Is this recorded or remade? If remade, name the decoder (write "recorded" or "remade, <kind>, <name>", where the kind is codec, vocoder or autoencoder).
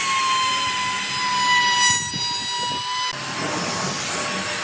recorded